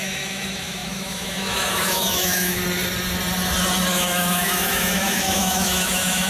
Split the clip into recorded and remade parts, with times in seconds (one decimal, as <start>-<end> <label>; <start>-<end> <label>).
0.0-2.6 remade; 2.6-3.9 recorded; 3.9-6.3 remade